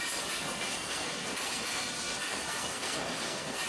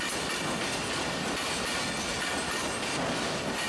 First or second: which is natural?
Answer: second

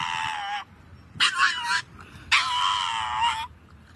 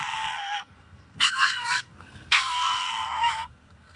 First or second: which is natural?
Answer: first